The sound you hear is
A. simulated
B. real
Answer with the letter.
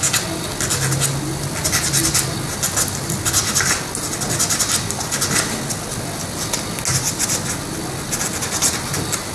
B